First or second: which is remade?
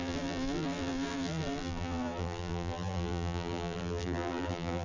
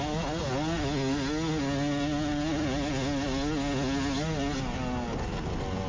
first